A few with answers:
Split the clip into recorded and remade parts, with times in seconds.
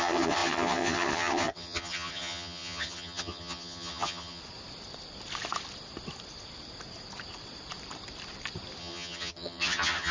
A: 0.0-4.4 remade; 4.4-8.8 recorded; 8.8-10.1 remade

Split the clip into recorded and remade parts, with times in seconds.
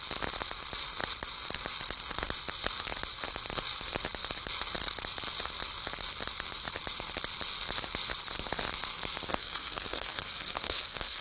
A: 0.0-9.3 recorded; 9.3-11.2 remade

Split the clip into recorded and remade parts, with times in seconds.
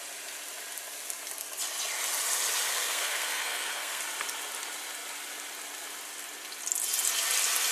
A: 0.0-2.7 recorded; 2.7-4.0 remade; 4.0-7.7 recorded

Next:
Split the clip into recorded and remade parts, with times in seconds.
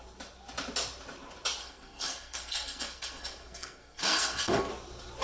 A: 0.0-1.6 recorded; 1.6-4.7 remade; 4.7-5.2 recorded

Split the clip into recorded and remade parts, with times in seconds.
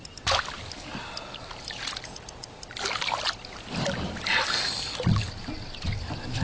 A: 0.0-6.4 recorded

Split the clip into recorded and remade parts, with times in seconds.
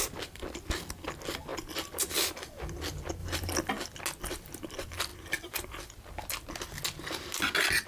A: 0.0-1.5 recorded; 1.5-2.5 remade; 2.5-3.2 recorded; 3.2-3.7 remade; 3.7-5.1 recorded; 5.1-5.9 remade; 5.9-7.9 recorded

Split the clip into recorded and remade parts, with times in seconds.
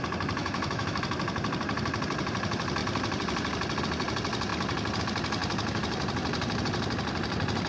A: 0.0-0.4 recorded; 0.4-1.0 remade; 1.0-7.7 recorded